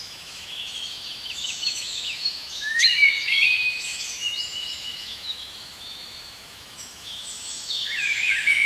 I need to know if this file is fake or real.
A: fake